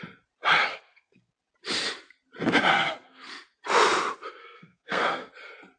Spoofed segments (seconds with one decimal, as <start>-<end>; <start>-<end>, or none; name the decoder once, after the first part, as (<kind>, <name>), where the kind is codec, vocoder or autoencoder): 0.7-1.3 (codec, SNAC); 2.7-3.3; 4.4-5.3